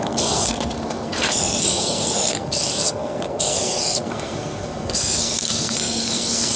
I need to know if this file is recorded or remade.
remade